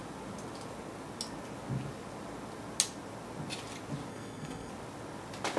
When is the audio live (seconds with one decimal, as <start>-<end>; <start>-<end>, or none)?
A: 0.0-4.1; 4.7-5.6